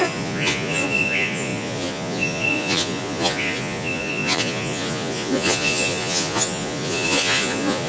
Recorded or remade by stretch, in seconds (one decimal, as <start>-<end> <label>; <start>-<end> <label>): 0.0-7.9 remade